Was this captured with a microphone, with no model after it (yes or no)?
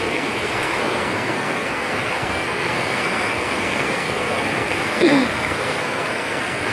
no